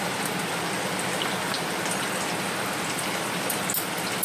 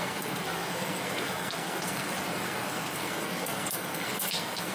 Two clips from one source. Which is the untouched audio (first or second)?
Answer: first